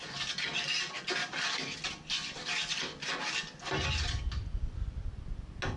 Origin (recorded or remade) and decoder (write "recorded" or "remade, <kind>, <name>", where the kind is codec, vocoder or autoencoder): recorded